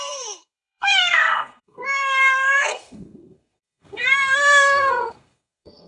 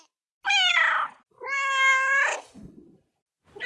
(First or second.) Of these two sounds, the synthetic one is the first